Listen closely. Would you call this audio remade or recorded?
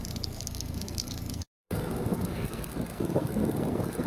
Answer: remade